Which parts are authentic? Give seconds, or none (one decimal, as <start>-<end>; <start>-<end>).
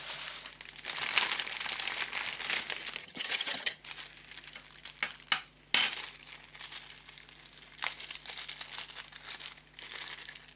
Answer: 0.0-3.0; 3.8-10.6